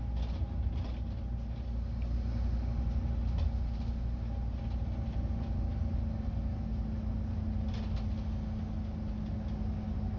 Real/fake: real